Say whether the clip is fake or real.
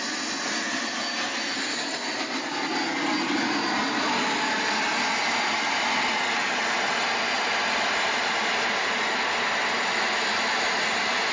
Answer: real